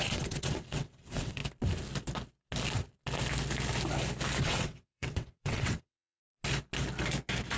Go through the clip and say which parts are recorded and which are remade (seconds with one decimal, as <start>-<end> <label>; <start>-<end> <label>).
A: 0.0-1.4 remade; 1.4-4.4 recorded; 4.4-6.2 remade; 6.2-7.6 recorded